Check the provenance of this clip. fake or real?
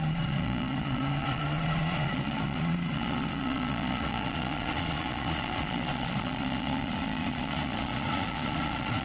fake